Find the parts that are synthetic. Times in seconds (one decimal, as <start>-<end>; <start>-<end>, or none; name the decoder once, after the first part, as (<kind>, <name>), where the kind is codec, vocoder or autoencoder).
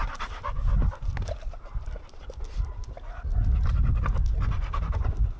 0.0-0.7 (vocoder, BigVGAN v2); 2.0-2.8